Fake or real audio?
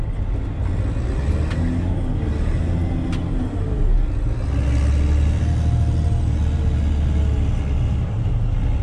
real